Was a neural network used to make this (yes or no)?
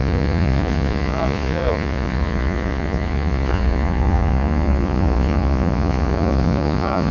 yes